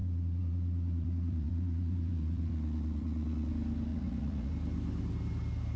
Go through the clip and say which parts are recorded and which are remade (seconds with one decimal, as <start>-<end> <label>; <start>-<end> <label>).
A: 0.0-3.5 remade; 3.5-3.9 recorded; 3.9-4.5 remade; 4.5-5.8 recorded